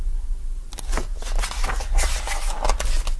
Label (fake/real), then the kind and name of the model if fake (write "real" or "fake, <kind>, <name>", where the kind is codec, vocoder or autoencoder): real